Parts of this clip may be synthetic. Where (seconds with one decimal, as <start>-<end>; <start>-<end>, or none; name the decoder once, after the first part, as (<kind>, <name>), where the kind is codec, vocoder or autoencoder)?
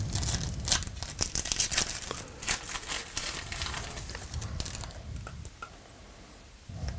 none